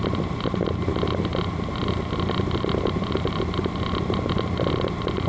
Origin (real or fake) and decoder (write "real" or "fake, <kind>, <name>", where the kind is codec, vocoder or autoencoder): real